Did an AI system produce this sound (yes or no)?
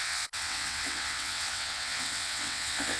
yes